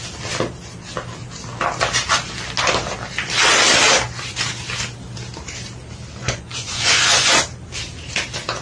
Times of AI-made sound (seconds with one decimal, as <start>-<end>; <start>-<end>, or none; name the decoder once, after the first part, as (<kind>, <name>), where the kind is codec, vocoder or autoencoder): 6.2-7.4 (vocoder, Vocos)